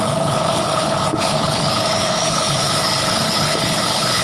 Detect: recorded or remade remade